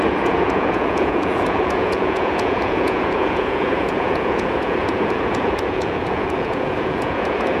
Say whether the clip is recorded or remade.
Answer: remade